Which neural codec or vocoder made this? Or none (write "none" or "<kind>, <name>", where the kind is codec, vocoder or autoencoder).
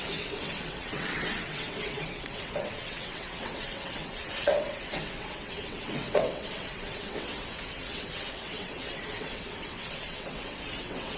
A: vocoder, WaveNeXt